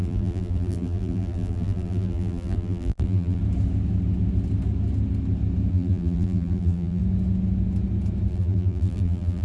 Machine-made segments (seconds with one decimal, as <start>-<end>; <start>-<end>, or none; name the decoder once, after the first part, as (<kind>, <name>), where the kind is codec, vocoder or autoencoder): 0.0-3.4 (vocoder, BigVGAN v2); 5.7-7.0; 8.3-9.4